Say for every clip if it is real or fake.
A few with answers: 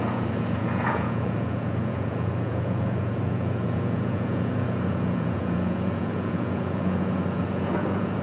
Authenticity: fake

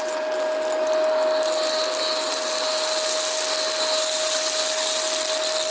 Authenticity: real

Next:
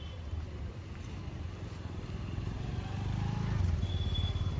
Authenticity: real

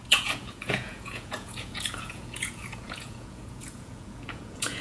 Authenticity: fake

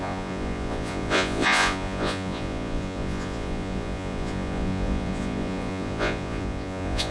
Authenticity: fake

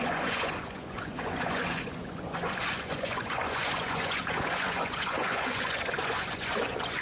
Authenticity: fake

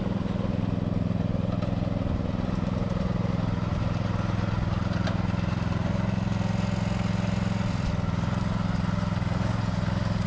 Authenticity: real